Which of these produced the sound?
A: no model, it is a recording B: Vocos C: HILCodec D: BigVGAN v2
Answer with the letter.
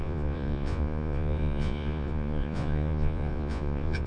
B